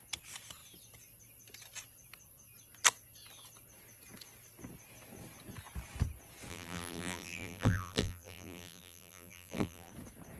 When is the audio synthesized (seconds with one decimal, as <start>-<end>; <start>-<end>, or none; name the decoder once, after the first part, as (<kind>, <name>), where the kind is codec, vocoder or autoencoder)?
6.5-9.9 (vocoder, BigVGAN v2)